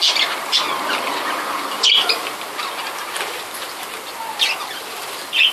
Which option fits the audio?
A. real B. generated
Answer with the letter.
A